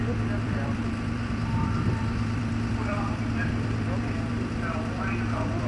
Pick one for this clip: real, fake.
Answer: fake